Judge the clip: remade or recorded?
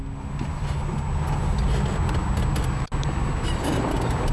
recorded